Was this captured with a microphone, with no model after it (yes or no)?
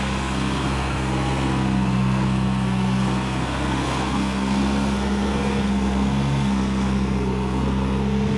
no